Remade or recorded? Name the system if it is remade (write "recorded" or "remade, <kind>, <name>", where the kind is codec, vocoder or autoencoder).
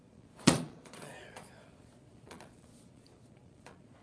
remade, vocoder, Vocos